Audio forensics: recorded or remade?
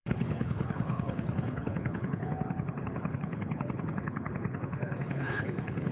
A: remade